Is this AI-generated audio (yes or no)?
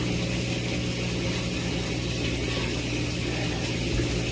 no